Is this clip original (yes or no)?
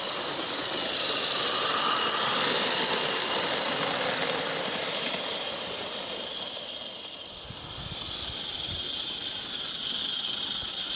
yes